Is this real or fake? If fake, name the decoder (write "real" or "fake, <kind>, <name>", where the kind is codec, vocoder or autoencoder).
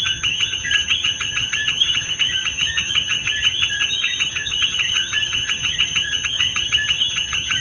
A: fake, vocoder, HiFi-GAN